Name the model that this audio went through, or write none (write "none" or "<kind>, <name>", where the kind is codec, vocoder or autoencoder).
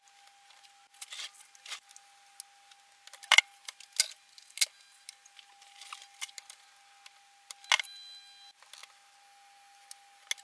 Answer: none